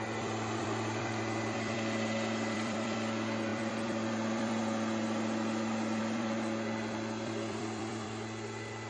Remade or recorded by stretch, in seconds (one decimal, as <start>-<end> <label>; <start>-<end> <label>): 0.0-4.6 remade; 4.6-6.0 recorded; 6.0-8.9 remade

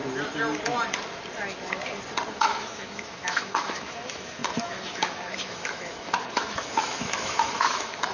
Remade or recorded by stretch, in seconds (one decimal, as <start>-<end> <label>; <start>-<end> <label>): 0.0-2.4 recorded; 2.4-8.1 remade

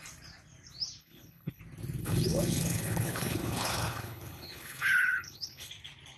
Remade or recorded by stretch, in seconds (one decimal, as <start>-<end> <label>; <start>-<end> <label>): 0.0-1.0 recorded; 1.0-1.6 remade; 1.6-2.0 recorded; 2.0-5.7 remade; 5.7-6.2 recorded

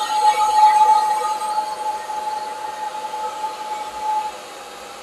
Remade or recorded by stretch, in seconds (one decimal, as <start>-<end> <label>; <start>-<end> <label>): 0.0-0.9 recorded; 0.9-1.5 remade; 1.5-2.9 recorded; 2.9-3.5 remade; 3.5-5.0 recorded

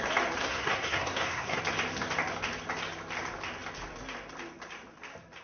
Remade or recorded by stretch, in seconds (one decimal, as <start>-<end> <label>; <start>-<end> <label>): 0.0-0.4 recorded; 0.4-1.6 remade; 1.6-5.4 recorded

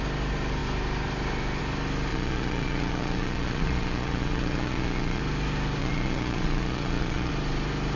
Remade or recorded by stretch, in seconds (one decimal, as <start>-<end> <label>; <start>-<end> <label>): 0.0-2.1 recorded; 2.1-5.2 remade; 5.2-5.8 recorded; 5.8-7.3 remade; 7.3-8.0 recorded

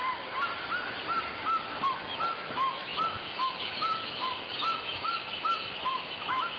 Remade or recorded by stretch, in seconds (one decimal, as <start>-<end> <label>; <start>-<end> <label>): 0.0-1.9 recorded; 1.9-6.6 remade